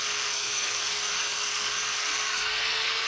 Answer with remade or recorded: remade